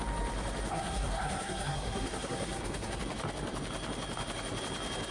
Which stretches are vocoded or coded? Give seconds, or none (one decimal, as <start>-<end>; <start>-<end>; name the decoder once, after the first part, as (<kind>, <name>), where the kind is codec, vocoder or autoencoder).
0.7-3.0 (codec, SNAC)